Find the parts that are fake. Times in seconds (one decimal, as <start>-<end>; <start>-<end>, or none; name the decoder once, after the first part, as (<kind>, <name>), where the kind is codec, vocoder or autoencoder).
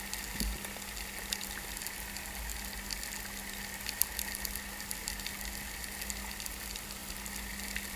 none